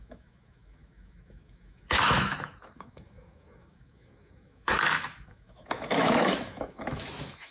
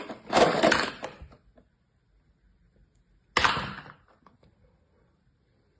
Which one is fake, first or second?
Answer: first